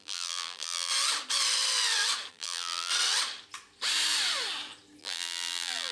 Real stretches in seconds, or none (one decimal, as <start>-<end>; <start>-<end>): 0.9-2.3; 2.9-5.0